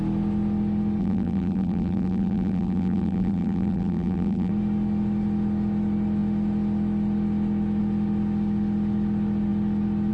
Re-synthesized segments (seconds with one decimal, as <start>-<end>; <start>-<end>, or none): 1.0-4.5